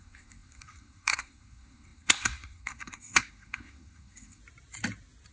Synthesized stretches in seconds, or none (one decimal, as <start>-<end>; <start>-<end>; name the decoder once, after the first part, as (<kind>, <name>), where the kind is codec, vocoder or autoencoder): 0.0-4.4 (codec, SNAC)